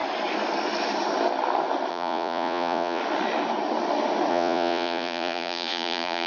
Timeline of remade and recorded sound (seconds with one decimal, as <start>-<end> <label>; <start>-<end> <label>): 0.0-1.9 recorded; 1.9-3.0 remade; 3.0-4.3 recorded; 4.3-6.3 remade